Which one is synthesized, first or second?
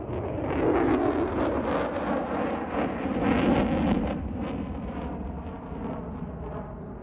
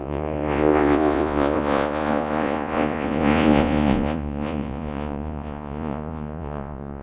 second